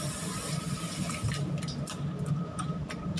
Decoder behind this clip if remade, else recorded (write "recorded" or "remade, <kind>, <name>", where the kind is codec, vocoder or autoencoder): recorded